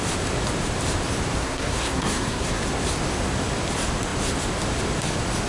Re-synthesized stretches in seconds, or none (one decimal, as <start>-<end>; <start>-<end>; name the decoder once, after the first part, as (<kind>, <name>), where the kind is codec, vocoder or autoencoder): 1.4-2.6 (codec, SNAC)